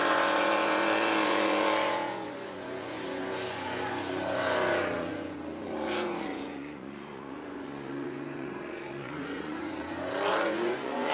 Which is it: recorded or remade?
remade